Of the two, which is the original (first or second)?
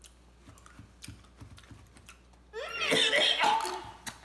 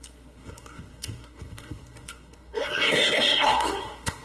first